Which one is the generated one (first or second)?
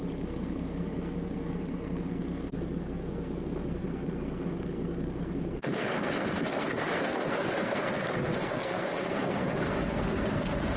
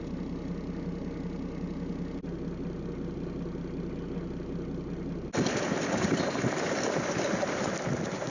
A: first